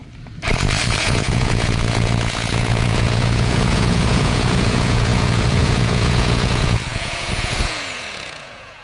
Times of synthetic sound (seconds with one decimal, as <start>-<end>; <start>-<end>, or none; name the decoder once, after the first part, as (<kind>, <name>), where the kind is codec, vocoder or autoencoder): 1.0-8.8 (vocoder, Vocos)